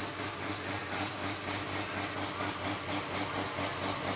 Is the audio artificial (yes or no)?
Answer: no